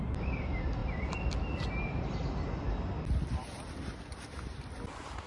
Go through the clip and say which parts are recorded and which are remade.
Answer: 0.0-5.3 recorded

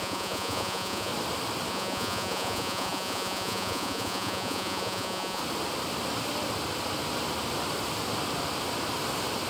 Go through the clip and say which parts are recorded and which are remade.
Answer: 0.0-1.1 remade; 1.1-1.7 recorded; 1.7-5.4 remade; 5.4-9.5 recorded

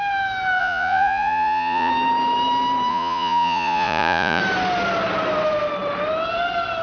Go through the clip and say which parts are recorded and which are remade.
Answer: 0.0-0.6 recorded; 0.6-1.9 remade; 1.9-2.9 recorded; 2.9-4.4 remade; 4.4-6.8 recorded

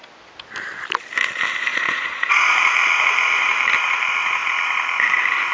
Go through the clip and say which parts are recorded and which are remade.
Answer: 0.0-1.7 recorded; 1.7-2.5 remade; 2.5-5.5 recorded